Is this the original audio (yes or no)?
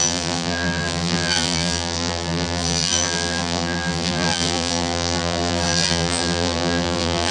no